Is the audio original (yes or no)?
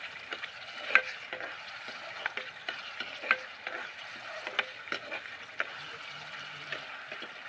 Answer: yes